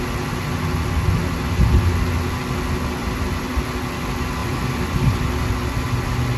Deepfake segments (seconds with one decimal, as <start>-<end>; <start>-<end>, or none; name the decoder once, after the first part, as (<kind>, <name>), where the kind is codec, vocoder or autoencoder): 3.0-3.6 (vocoder, BigVGAN v2); 4.4-5.5